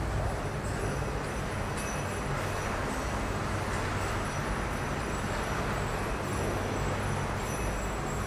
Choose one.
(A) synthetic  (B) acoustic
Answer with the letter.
B